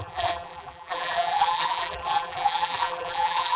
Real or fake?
fake